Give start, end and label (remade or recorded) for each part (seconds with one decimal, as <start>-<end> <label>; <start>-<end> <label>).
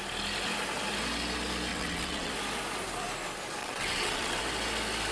0.0-1.7 recorded; 1.7-2.3 remade; 2.3-3.6 recorded; 3.6-4.4 remade; 4.4-5.1 recorded